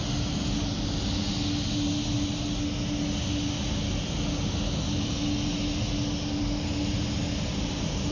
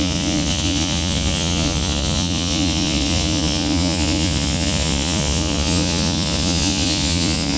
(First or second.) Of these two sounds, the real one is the first